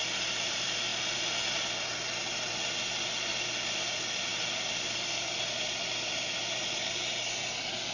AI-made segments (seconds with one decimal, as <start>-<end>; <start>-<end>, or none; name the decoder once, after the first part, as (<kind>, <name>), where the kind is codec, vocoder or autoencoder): none